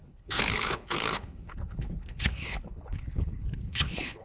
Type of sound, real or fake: fake